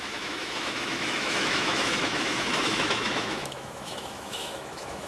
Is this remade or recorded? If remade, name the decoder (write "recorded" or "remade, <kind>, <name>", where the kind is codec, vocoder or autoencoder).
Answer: remade, autoencoder, DAC-VAE